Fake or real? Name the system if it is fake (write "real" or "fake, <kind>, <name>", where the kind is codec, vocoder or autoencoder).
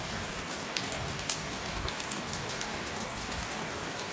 fake, codec, DAC